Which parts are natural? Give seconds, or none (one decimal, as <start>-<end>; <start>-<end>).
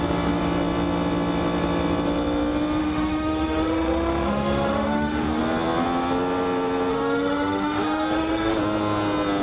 0.0-2.8; 5.4-6.9; 8.5-9.4